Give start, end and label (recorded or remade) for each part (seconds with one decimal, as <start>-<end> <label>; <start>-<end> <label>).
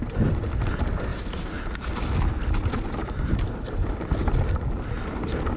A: 0.0-1.1 recorded; 1.1-1.9 remade; 1.9-3.0 recorded; 3.0-4.3 remade; 4.3-5.6 recorded